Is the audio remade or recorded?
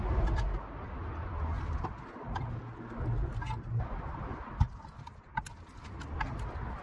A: recorded